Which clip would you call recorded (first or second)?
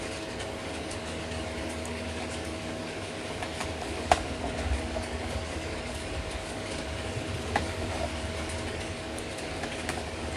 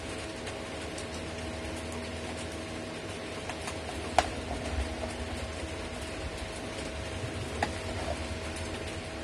second